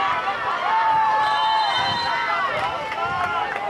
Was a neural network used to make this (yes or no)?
yes